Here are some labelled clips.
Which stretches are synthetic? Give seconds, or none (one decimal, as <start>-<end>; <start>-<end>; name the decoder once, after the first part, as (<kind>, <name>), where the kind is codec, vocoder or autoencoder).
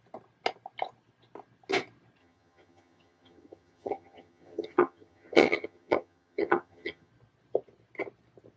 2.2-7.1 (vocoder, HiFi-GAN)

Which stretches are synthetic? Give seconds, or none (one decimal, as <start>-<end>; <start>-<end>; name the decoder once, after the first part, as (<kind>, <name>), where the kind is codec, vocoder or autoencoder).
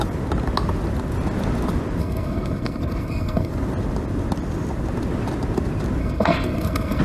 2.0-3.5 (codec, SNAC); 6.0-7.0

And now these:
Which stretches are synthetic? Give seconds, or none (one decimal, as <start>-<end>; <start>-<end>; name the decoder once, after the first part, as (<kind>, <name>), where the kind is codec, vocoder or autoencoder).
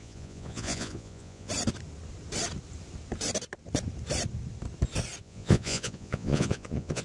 0.0-1.5 (vocoder, Vocos); 5.2-7.0